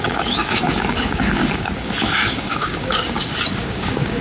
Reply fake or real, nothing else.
fake